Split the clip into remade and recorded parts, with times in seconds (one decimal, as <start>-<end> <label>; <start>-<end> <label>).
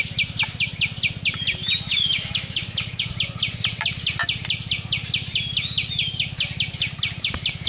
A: 0.0-1.6 recorded; 1.6-3.1 remade; 3.1-7.7 recorded